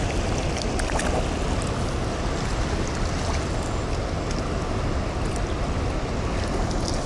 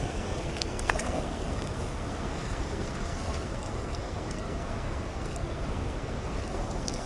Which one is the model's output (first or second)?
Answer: second